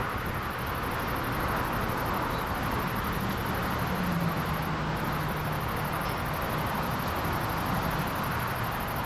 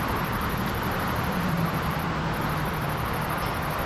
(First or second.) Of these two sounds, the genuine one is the first